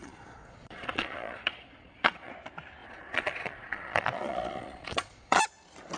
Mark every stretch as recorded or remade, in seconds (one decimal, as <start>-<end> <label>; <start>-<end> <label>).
0.0-2.3 remade; 2.3-2.8 recorded; 2.8-5.4 remade; 5.4-6.0 recorded